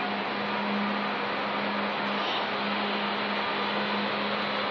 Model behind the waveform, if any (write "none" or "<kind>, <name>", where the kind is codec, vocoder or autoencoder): none